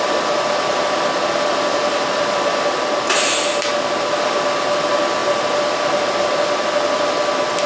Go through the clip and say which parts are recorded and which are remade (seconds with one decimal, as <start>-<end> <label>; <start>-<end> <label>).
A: 0.0-7.7 recorded